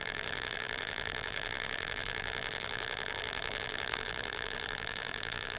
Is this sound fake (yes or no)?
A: yes